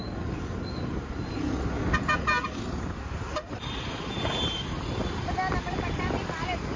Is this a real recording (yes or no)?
yes